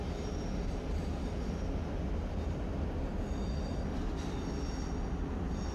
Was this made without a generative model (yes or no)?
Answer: yes